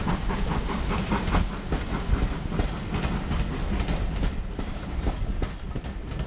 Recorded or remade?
recorded